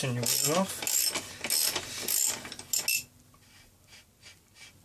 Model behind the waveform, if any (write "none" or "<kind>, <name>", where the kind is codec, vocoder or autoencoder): none